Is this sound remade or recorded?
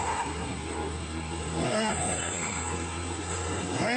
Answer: remade